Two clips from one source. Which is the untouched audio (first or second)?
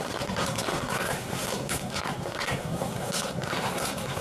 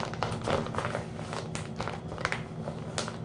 second